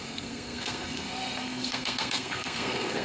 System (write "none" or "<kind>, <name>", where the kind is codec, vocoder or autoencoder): codec, SNAC